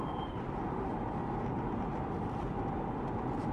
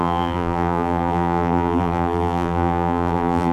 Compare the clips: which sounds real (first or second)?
first